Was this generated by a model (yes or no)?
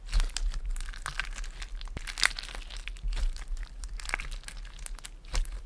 no